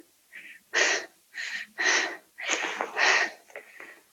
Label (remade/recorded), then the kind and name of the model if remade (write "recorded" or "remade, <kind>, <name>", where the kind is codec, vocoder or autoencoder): recorded